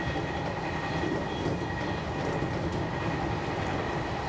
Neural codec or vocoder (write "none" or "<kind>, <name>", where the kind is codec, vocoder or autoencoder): none